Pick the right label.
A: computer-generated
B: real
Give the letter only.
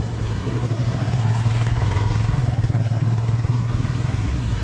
A